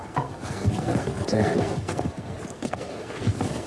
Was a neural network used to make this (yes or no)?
yes